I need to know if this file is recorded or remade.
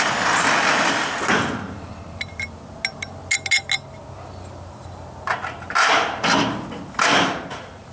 recorded